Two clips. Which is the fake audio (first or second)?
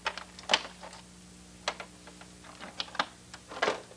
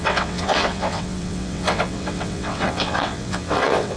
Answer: second